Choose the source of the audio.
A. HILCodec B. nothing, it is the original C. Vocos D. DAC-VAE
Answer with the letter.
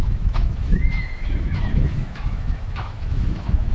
D